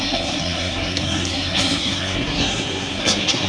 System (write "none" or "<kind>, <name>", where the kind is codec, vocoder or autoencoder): codec, SNAC